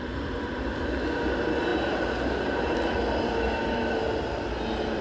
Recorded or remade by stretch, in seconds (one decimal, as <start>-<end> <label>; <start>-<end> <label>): 0.0-5.0 recorded